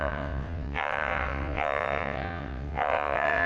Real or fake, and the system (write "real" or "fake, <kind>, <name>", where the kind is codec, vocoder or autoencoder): fake, vocoder, WaveNeXt